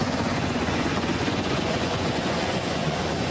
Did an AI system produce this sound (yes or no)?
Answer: yes